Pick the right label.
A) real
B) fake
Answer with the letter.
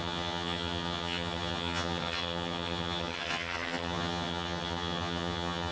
B